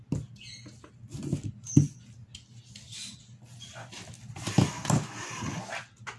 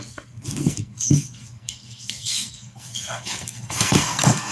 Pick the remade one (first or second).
second